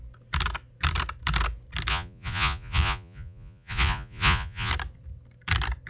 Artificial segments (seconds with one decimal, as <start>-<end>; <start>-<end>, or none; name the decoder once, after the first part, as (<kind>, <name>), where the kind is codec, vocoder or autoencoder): 1.9-4.7 (vocoder, Vocos)